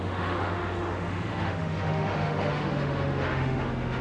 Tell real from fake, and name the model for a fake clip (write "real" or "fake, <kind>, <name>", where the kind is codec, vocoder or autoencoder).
fake, autoencoder, DAC-VAE